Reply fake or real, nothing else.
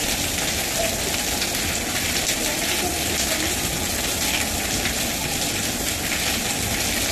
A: real